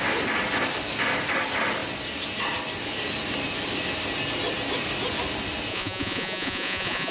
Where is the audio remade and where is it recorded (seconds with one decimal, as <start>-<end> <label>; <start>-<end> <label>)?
0.0-5.7 recorded; 5.7-7.1 remade